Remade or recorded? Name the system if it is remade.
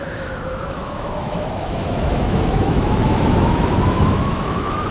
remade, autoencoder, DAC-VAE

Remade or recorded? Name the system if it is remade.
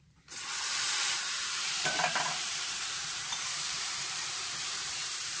remade, vocoder, BigVGAN v2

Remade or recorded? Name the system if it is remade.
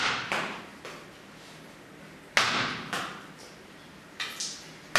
recorded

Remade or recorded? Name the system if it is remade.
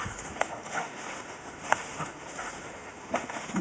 remade, autoencoder, DAC-VAE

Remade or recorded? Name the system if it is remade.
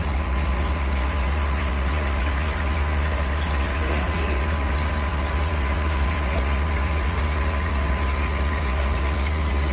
remade, vocoder, Vocos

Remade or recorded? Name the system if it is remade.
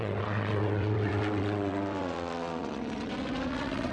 remade, vocoder, WaveNeXt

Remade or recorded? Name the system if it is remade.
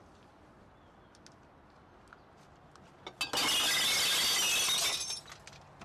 recorded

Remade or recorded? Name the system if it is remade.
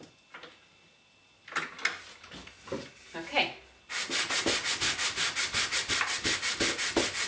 recorded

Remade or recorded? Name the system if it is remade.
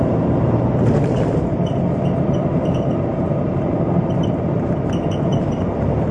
remade, vocoder, BigVGAN v2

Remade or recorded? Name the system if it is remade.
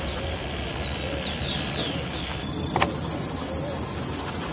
recorded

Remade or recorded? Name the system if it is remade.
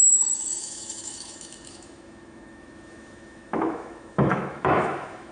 remade, autoencoder, DAC-VAE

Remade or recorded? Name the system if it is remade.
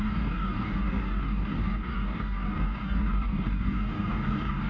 remade, codec, DAC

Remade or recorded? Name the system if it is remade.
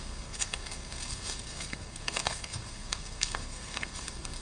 remade, codec, SNAC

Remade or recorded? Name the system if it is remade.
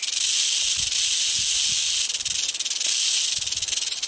recorded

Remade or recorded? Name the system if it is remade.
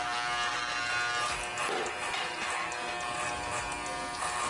recorded